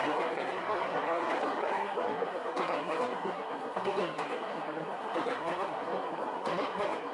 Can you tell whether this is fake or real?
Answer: fake